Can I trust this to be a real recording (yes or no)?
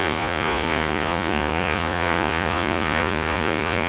no